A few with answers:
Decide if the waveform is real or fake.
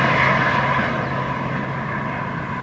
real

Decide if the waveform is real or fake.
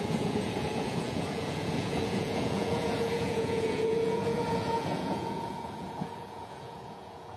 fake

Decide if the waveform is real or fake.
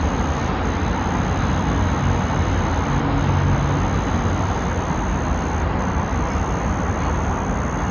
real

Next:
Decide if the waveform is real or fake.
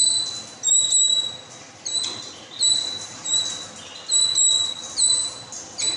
real